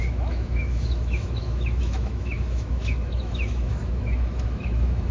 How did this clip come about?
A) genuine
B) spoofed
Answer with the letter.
B